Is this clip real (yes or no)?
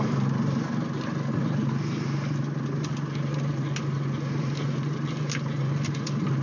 yes